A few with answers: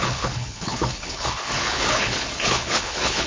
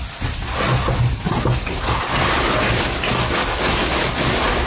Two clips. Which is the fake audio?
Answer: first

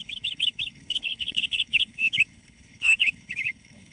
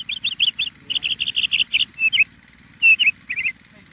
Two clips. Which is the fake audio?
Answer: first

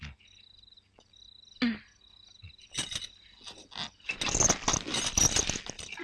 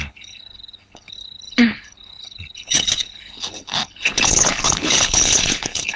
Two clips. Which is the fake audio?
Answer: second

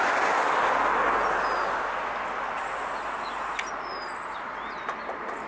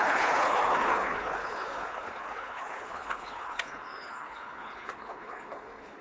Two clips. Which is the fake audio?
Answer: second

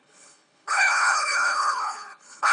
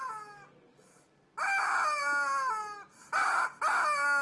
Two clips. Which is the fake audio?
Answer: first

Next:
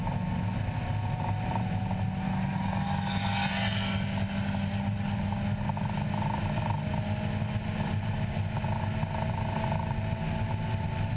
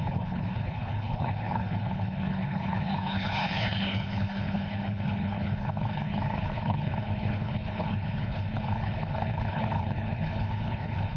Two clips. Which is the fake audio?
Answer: second